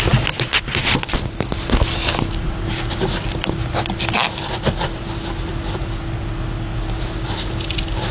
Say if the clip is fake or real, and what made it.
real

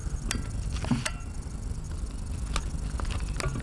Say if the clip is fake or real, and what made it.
real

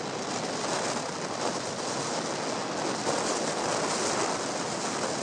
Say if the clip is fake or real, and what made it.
real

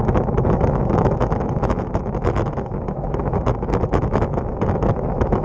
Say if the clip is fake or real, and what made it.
fake, autoencoder, DAC-VAE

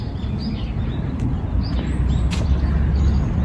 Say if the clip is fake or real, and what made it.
real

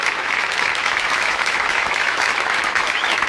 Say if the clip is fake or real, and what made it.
fake, autoencoder, DAC-VAE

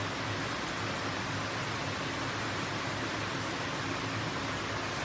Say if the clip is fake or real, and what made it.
real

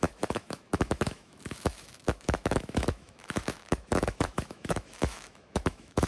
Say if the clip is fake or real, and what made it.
fake, autoencoder, DAC-VAE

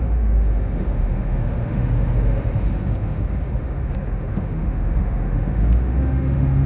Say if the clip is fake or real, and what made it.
fake, autoencoder, DAC-VAE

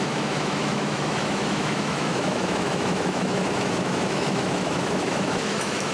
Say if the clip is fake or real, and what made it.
fake, autoencoder, DAC-VAE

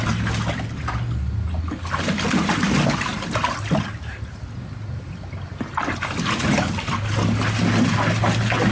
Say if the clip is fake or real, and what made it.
real